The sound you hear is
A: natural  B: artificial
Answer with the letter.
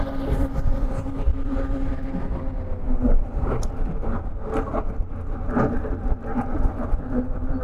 B